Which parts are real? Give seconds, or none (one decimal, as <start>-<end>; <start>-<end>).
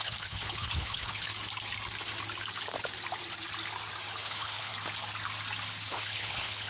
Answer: 1.3-4.2; 4.7-5.9